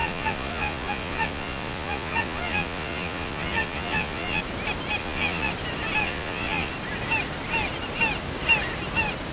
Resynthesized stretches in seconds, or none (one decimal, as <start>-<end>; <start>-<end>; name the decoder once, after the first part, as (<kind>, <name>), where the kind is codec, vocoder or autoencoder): 0.0-4.4 (vocoder, Vocos); 5.0-5.5; 6.0-6.7